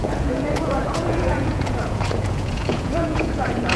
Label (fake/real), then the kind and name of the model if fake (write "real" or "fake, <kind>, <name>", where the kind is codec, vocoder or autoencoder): fake, vocoder, Vocos